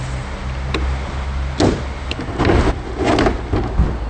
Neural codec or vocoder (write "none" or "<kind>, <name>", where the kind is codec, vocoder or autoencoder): none